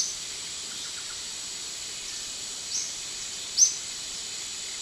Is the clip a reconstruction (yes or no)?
yes